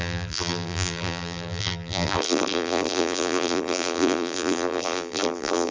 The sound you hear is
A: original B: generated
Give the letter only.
B